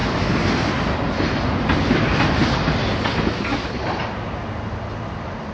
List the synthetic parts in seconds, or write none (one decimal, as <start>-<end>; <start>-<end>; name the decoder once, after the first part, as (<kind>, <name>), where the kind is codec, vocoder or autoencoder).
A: none